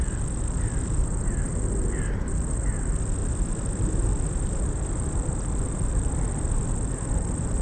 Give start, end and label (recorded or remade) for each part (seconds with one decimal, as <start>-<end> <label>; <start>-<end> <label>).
0.0-1.4 remade; 1.4-3.2 recorded; 3.2-7.6 remade